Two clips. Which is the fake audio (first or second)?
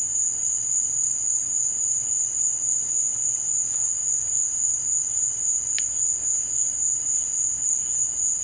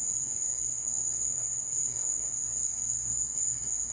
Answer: second